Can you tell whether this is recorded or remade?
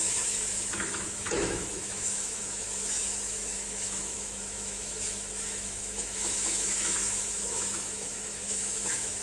remade